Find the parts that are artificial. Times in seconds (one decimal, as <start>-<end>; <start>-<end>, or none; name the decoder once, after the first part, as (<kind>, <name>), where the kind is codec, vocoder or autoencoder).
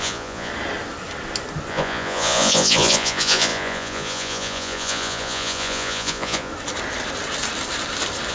0.0-0.5 (vocoder, Vocos); 1.7-6.5